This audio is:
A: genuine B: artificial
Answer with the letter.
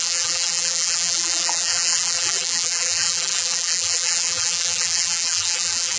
B